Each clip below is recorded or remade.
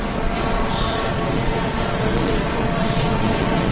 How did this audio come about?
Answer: remade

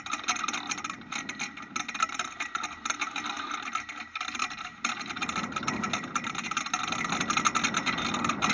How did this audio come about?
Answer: recorded